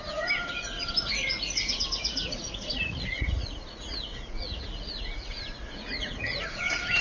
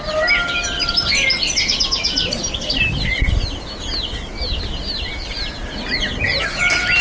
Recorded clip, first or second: second